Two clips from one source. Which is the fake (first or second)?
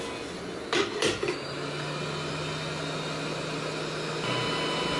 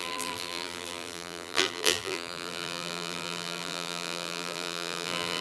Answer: second